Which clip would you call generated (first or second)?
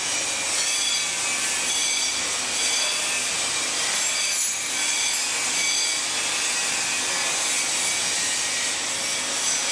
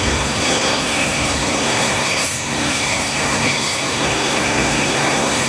second